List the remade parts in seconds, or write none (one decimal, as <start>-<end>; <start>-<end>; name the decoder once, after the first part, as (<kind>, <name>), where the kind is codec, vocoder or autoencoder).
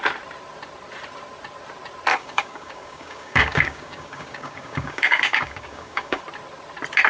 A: 2.1-6.2 (codec, DAC)